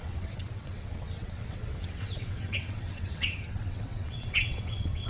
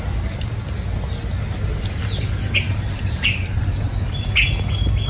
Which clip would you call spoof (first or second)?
first